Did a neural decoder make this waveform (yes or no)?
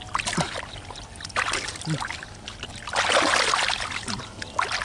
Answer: no